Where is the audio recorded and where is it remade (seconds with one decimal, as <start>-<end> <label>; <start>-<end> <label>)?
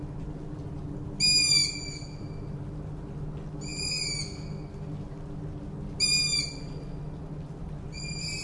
0.0-8.4 recorded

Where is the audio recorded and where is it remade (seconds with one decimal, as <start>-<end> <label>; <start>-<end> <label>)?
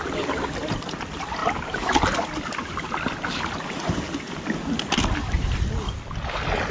0.0-6.7 recorded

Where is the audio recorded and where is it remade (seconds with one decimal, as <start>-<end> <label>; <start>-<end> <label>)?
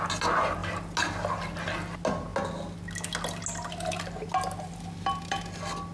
0.0-5.9 recorded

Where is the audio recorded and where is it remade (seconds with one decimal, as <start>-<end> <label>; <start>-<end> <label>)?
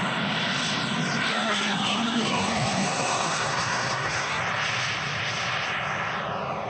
0.0-1.3 recorded; 1.3-4.4 remade; 4.4-6.7 recorded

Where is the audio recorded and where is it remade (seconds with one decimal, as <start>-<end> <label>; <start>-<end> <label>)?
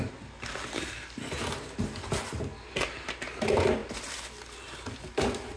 0.0-5.6 recorded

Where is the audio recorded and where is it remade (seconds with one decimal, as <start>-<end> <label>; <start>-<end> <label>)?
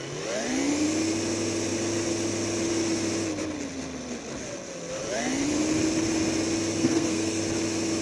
0.0-6.8 recorded; 6.8-7.4 remade; 7.4-8.0 recorded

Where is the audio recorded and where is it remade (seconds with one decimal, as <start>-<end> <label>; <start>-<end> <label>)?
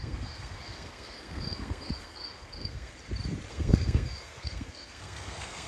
0.0-2.9 remade; 2.9-3.5 recorded; 3.5-5.7 remade